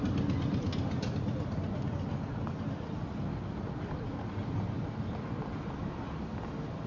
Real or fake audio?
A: real